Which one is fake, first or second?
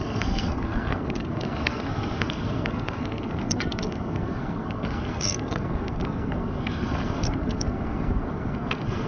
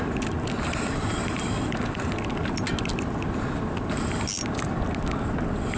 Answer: first